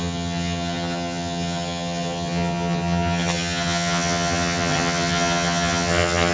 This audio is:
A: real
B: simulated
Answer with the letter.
B